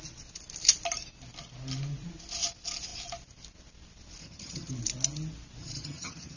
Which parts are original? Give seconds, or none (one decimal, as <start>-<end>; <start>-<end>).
0.0-4.2; 4.7-5.6